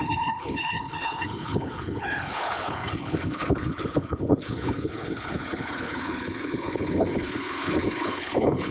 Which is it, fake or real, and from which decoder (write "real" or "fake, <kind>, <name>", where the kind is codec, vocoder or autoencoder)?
fake, codec, HILCodec